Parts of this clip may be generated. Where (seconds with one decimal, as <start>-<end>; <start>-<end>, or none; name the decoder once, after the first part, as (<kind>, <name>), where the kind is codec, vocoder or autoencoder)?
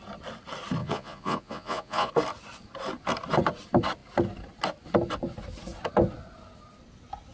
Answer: 0.8-2.1 (vocoder, Vocos)